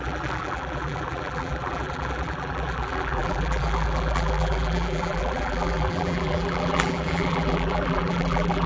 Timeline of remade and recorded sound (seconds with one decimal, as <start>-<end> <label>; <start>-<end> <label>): 0.0-8.7 remade